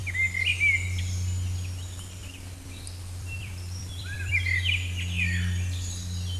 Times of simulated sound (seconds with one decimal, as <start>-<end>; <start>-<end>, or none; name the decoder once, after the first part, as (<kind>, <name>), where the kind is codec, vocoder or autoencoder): 2.2-4.3 (vocoder, BigVGAN v2)